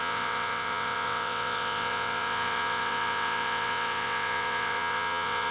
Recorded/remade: remade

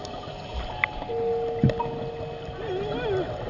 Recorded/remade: recorded